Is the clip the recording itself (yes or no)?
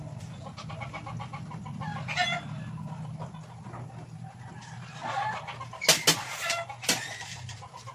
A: yes